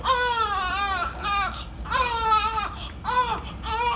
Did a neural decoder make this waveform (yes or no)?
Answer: no